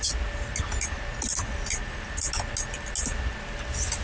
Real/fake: real